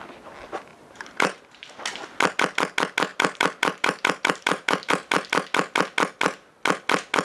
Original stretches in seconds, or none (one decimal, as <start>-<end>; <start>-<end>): 0.0-0.7; 1.4-3.1; 4.9-7.2